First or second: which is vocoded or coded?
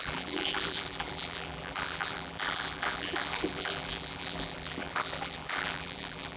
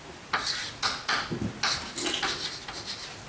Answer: first